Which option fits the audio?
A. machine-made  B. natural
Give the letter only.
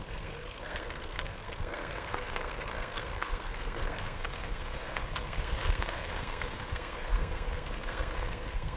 A